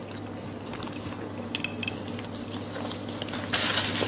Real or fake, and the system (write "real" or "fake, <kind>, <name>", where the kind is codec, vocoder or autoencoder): real